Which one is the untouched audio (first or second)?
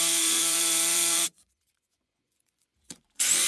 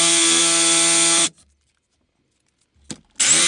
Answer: second